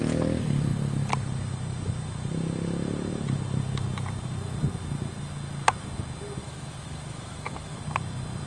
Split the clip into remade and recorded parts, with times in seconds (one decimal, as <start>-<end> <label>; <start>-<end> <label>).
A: 0.0-6.4 recorded; 6.4-7.8 remade; 7.8-8.5 recorded